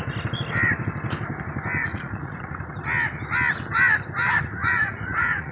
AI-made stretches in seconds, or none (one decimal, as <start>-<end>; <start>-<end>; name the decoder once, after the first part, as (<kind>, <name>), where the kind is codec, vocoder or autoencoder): 1.8-2.5 (vocoder, Vocos); 4.6-5.5